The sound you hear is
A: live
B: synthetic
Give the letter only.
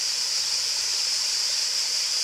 B